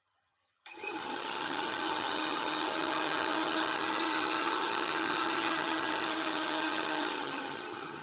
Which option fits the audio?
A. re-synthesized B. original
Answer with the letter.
A